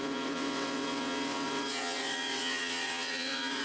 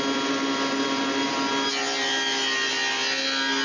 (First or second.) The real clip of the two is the second